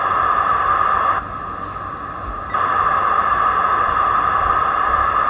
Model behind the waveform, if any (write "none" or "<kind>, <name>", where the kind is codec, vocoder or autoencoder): none